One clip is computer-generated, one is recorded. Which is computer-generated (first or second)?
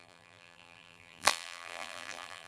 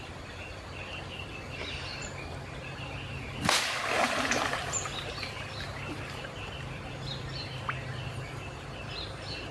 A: first